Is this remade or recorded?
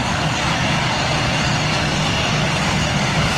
remade